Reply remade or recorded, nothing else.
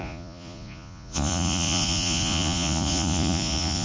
remade